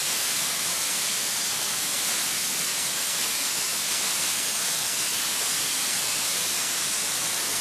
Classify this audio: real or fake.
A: fake